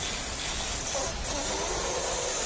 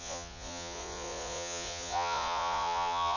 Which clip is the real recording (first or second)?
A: first